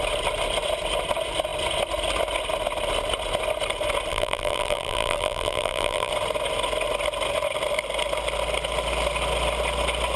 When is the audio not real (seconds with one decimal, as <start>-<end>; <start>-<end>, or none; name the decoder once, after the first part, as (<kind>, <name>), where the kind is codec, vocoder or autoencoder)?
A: 4.1-6.1 (vocoder, BigVGAN v2)

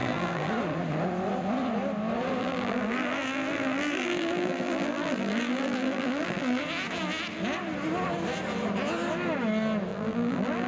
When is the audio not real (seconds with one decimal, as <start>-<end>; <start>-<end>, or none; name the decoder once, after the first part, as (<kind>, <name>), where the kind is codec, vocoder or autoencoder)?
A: 0.0-0.5 (vocoder, BigVGAN v2); 2.4-6.6; 9.9-10.7

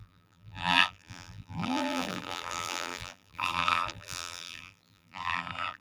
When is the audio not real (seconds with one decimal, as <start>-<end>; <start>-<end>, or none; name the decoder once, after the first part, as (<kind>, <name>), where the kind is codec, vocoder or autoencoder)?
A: 0.0-5.8 (vocoder, BigVGAN v2)

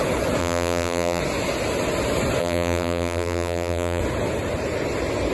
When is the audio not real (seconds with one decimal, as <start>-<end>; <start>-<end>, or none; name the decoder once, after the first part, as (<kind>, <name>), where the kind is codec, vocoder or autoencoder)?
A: 0.4-1.2 (vocoder, BigVGAN v2); 2.4-4.0

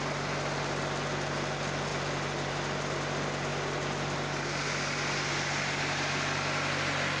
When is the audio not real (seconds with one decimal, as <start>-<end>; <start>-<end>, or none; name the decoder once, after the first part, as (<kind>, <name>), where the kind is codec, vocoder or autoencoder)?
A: 1.9-2.5 (vocoder, BigVGAN v2)

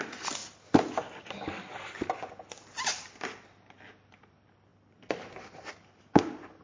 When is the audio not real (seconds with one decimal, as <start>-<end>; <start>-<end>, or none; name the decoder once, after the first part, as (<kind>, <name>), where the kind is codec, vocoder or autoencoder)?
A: 0.4-1.4 (vocoder, BigVGAN v2); 4.7-6.0

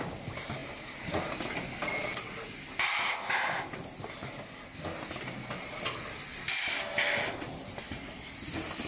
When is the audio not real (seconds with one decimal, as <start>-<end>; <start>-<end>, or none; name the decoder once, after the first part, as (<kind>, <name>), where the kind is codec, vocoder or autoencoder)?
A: none

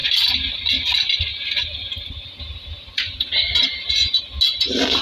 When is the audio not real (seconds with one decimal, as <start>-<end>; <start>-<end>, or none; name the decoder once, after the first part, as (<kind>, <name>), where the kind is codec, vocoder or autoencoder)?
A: 0.0-0.6 (vocoder, BigVGAN v2); 1.3-4.2